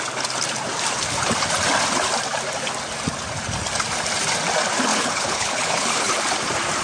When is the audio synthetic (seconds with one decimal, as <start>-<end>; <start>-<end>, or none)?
4.9-6.1